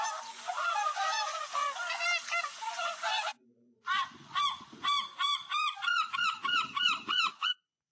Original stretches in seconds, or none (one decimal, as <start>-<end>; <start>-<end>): 1.6-2.4